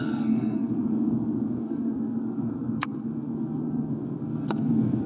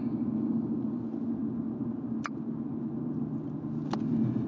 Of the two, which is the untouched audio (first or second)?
second